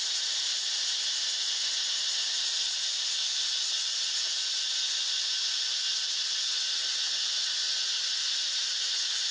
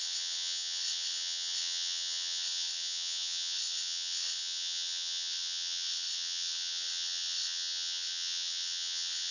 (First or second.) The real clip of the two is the first